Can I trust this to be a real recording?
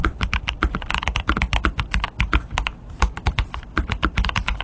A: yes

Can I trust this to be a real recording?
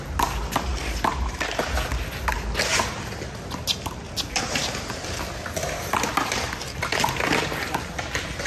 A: yes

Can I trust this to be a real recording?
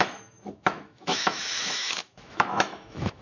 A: no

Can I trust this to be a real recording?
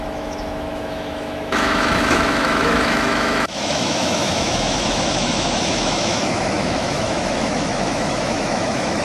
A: no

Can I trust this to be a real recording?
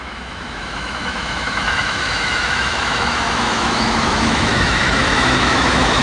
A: no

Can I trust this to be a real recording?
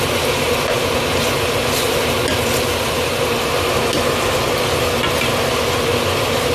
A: yes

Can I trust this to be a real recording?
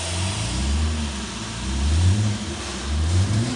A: yes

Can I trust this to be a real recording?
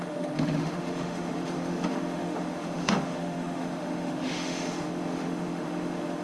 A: no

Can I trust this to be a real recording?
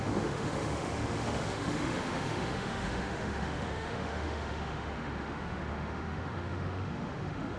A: no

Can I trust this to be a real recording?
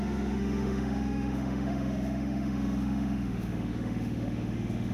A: no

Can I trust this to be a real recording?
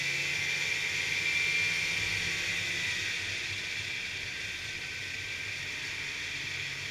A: yes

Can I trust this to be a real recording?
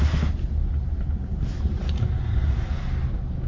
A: yes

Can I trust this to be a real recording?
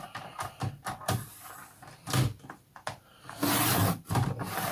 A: yes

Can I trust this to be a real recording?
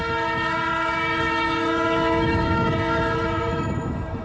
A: no